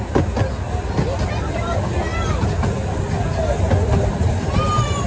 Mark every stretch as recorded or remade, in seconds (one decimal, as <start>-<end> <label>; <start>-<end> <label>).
0.0-5.1 recorded